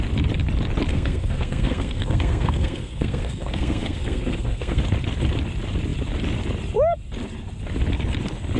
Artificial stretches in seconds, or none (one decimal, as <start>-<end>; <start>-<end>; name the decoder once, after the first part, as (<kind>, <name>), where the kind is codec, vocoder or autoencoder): 0.9-4.8 (codec, SNAC)